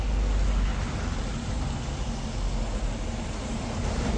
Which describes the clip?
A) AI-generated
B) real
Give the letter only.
B